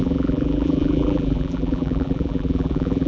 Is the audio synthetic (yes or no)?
yes